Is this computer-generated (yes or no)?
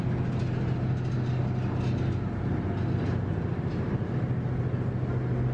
no